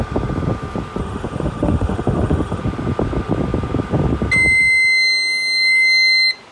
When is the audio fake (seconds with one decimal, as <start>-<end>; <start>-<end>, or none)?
1.0-2.6